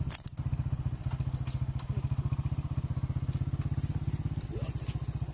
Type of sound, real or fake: real